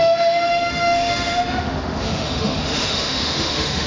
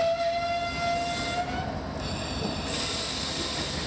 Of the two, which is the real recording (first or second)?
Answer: second